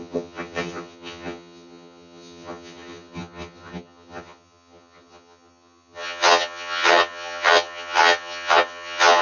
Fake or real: fake